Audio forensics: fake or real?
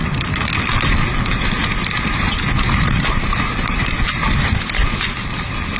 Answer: real